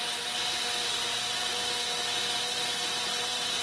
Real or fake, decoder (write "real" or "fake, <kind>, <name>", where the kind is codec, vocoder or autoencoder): real